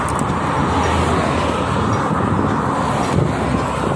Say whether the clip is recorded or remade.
recorded